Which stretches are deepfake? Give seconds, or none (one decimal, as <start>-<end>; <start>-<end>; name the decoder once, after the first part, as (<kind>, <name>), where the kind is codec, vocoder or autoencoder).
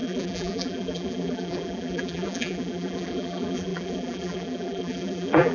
0.0-5.5 (vocoder, BigVGAN v2)